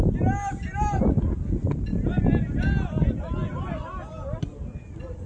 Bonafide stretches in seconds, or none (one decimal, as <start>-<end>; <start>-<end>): 0.0-5.3